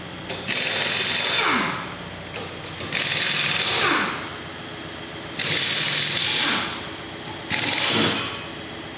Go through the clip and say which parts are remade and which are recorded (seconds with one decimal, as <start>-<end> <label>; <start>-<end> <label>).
0.0-9.0 recorded